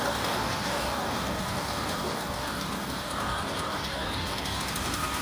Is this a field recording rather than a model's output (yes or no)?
no